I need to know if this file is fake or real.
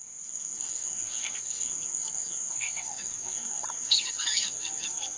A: fake